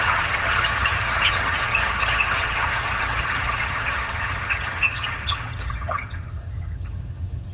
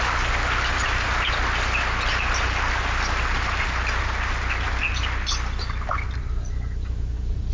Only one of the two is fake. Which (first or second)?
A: first